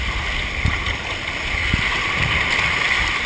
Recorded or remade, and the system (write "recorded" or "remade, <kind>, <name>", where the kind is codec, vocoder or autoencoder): recorded